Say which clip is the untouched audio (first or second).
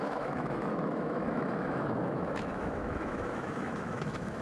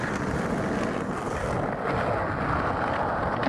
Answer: second